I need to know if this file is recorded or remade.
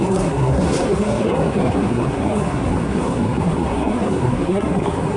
remade